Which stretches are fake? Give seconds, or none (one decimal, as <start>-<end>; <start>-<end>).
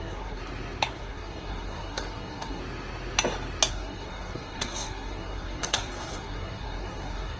0.0-0.4; 0.9-2.6; 3.7-7.4